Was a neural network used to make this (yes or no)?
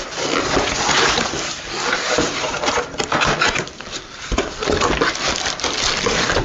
yes